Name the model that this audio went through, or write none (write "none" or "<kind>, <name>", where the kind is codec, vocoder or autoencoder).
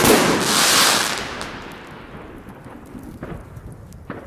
none